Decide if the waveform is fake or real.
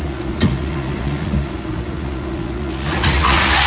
fake